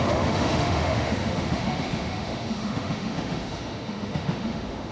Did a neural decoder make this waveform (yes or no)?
yes